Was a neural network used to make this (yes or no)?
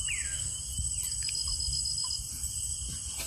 no